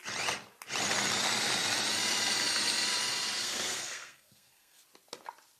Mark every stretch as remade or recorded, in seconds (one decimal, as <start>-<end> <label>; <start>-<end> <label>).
0.0-3.4 recorded; 3.4-4.8 remade; 4.8-5.6 recorded